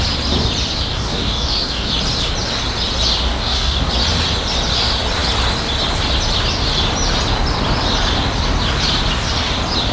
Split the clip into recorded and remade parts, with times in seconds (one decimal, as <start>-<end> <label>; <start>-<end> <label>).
0.0-0.9 recorded; 0.9-1.9 remade; 1.9-3.3 recorded; 3.3-3.9 remade; 3.9-9.9 recorded